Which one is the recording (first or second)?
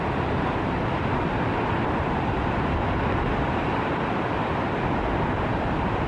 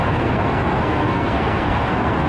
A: first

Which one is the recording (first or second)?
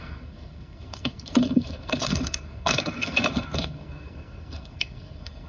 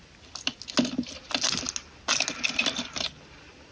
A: second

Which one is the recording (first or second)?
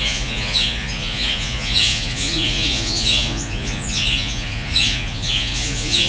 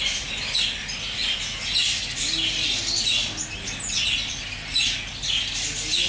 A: second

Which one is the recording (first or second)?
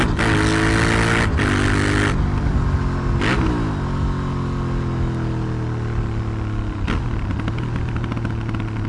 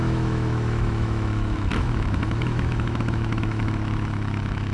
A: first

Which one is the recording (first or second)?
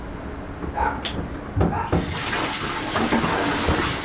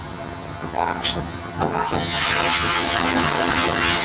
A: first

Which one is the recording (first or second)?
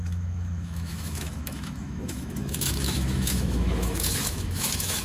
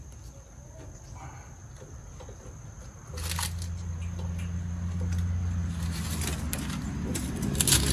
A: second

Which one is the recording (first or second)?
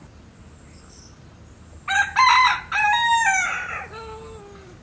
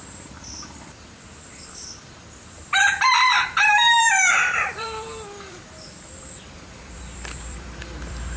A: first